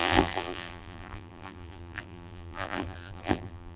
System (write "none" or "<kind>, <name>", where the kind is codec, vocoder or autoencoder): vocoder, BigVGAN v2